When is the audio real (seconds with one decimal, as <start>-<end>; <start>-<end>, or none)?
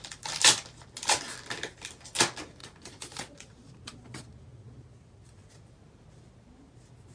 0.0-2.6; 5.5-7.1